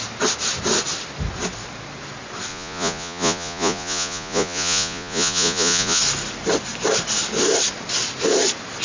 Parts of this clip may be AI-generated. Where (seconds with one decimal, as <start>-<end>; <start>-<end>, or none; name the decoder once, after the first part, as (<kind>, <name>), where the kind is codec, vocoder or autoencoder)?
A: 2.5-6.0 (vocoder, Vocos)